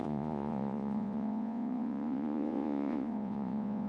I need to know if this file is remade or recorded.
remade